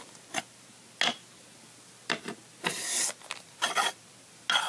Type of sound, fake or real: real